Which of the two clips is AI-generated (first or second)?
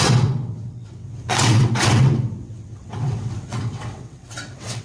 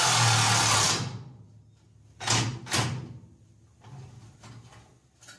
first